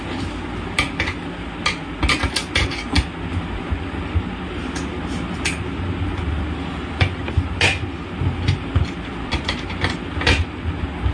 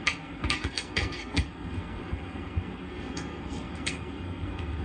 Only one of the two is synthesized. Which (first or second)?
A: second